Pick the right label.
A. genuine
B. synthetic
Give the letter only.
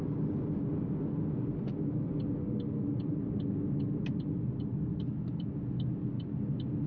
A